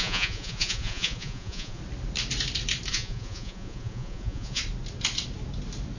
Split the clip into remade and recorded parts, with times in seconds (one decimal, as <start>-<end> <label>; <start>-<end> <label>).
0.0-1.8 remade; 1.8-2.9 recorded; 2.9-4.6 remade; 4.6-6.0 recorded